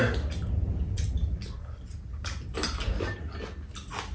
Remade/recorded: recorded